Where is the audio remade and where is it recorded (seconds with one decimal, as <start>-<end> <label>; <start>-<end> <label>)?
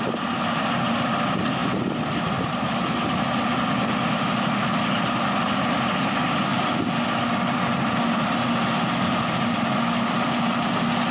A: 0.0-11.1 recorded